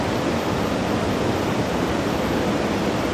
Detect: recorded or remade remade